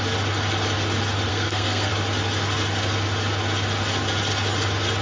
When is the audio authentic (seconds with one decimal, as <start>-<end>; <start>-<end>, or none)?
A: 0.0-1.3; 1.9-5.0